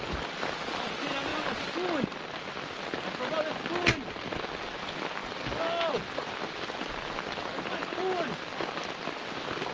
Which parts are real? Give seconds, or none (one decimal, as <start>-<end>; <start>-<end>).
0.0-9.7